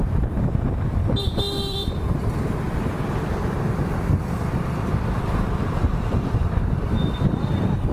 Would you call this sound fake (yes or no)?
no